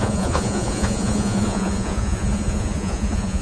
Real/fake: fake